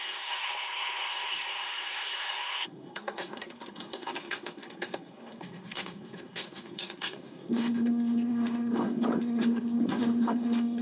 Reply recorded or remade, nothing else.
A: remade